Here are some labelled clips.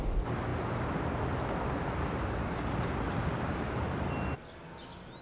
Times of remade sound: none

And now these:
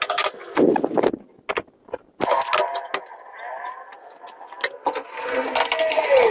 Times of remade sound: none

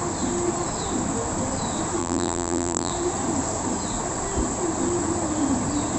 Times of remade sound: 2.0-2.9 (vocoder, BigVGAN v2)

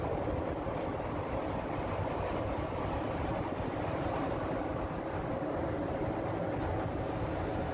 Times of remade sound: none

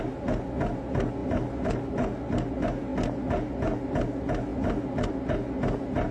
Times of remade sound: none

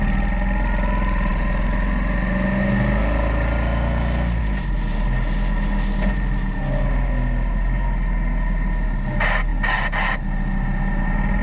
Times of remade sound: none

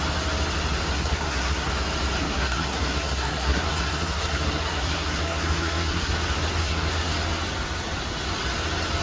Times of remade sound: 0.9-1.7 (codec, SNAC); 2.2-6.1; 6.6-7.1